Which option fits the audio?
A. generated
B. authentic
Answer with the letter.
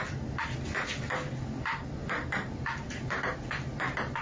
B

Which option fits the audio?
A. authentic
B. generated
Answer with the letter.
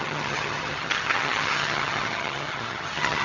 B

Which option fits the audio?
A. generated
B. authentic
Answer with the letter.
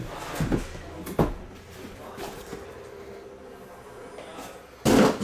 B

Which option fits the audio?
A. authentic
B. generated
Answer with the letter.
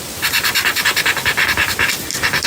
A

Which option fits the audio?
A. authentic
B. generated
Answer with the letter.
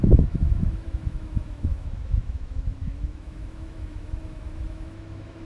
B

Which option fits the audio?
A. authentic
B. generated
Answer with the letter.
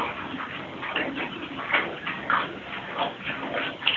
A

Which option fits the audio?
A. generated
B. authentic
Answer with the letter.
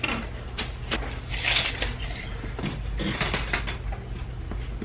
B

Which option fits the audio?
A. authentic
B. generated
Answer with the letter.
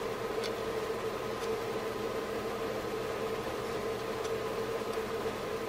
A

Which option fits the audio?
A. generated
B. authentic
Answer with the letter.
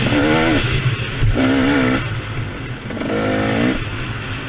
B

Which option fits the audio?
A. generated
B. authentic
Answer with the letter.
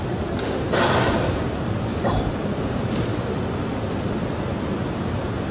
B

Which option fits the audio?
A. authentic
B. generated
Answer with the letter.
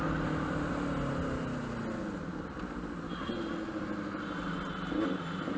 A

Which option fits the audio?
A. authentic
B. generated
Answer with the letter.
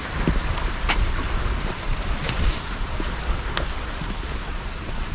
B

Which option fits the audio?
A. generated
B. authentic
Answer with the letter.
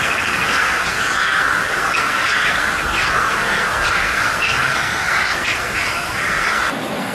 A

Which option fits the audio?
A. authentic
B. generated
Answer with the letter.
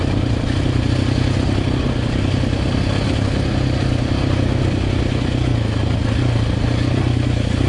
A